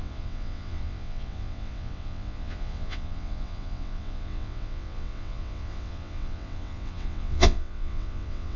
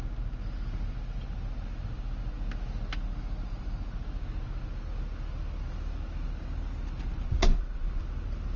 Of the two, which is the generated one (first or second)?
first